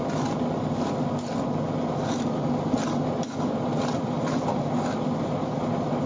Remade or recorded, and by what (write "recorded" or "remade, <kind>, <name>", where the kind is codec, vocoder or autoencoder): recorded